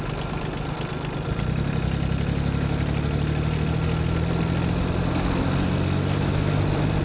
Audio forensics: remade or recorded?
recorded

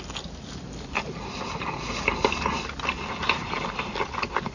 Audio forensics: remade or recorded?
recorded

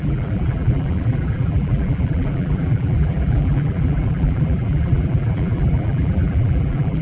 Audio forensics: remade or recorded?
remade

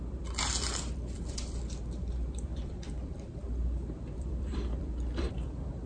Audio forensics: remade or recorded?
remade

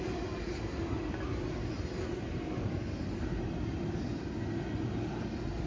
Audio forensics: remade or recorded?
recorded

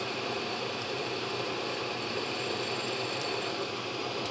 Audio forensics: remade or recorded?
remade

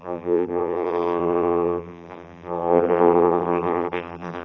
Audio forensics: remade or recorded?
remade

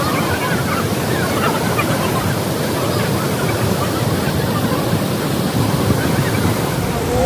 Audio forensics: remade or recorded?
remade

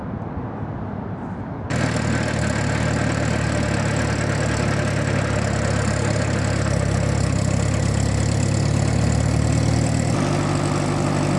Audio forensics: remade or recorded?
recorded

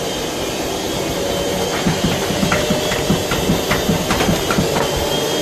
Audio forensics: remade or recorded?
recorded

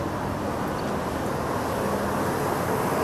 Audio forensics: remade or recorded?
recorded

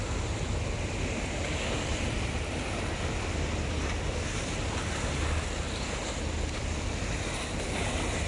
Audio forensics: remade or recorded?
recorded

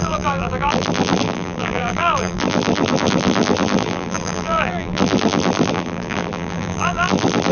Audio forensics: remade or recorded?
remade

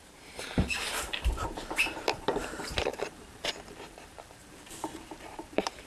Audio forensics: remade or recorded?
remade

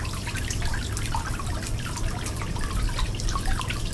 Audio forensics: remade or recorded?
recorded